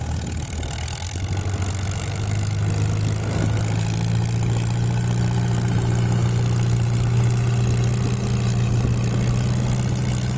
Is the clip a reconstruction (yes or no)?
no